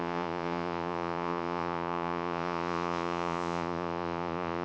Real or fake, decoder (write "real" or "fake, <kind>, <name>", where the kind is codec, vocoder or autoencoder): fake, vocoder, Vocos